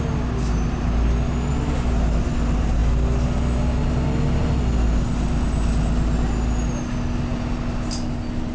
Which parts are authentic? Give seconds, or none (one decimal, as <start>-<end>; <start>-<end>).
0.0-8.5